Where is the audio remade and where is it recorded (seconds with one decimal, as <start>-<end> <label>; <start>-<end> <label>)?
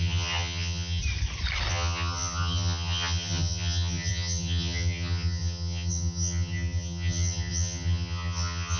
0.0-1.0 remade; 1.0-1.7 recorded; 1.7-8.8 remade